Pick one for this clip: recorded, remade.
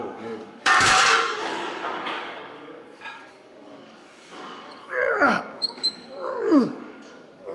remade